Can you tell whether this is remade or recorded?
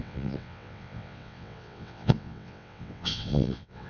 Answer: remade